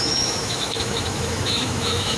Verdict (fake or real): fake